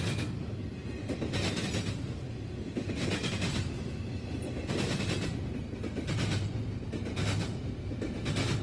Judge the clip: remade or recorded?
recorded